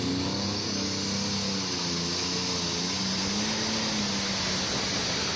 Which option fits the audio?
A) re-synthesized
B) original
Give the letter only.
B